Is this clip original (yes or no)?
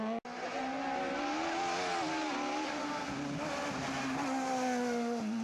yes